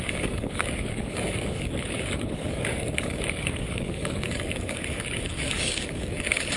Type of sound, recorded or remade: remade